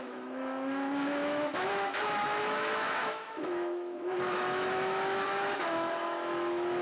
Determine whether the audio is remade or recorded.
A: remade